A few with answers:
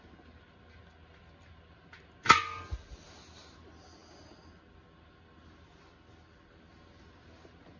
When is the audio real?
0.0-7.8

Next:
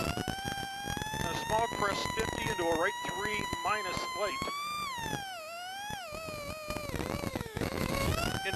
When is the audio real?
0.0-7.3; 8.1-8.6

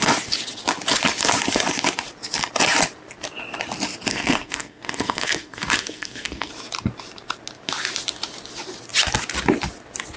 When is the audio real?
0.0-4.1; 6.5-10.2

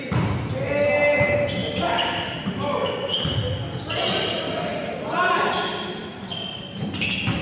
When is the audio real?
0.0-7.4